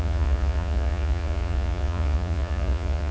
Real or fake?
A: fake